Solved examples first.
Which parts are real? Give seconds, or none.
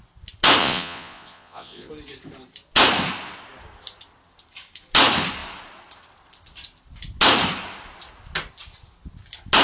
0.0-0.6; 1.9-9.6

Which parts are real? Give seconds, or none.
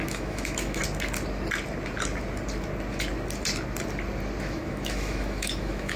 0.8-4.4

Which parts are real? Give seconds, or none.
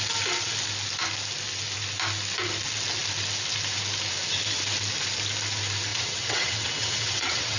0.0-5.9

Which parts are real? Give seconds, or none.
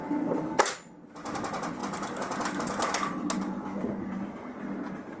0.0-5.2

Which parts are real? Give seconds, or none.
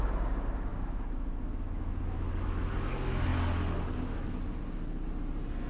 0.0-0.7; 2.7-5.7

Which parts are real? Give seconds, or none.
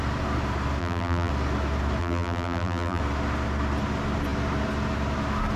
0.0-0.8; 1.3-2.0; 3.0-5.6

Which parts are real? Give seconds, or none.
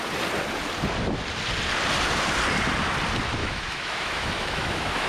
0.0-3.4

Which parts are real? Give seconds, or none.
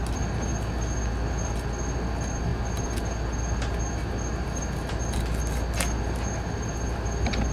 0.0-7.5